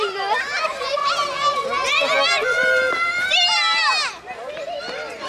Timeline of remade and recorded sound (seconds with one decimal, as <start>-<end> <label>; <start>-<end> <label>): 0.0-5.3 recorded